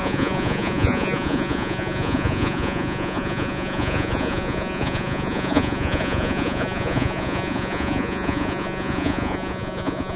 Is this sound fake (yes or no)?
yes